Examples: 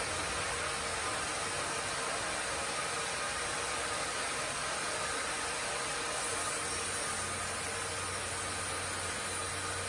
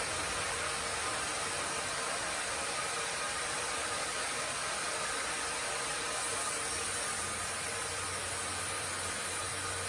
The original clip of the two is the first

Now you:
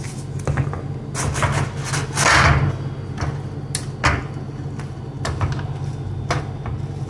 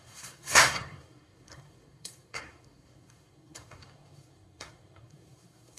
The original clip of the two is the first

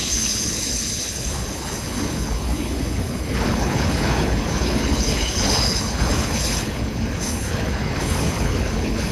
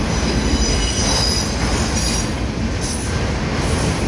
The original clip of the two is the second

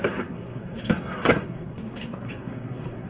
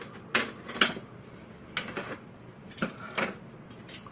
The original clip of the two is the second